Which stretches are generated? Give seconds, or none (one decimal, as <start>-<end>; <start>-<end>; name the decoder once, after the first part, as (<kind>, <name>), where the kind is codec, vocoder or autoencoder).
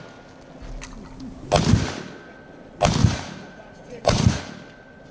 3.0-4.4 (vocoder, Vocos)